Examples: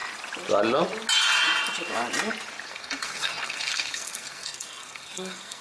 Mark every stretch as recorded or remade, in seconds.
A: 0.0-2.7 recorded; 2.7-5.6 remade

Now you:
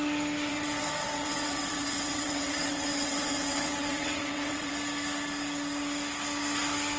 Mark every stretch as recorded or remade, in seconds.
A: 0.0-0.5 recorded; 0.5-4.7 remade; 4.7-7.0 recorded

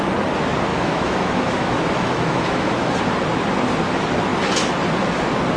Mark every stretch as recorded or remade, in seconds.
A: 0.0-0.7 recorded; 0.7-3.0 remade; 3.0-5.6 recorded

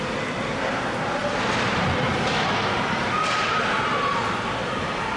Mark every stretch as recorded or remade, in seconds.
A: 0.0-5.2 recorded